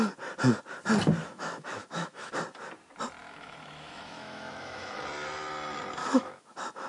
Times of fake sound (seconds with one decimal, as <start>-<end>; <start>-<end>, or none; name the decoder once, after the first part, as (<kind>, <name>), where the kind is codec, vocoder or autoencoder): 1.2-2.3 (autoencoder, DAC-VAE); 3.2-5.0; 6.0-6.9